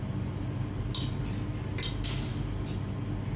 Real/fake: real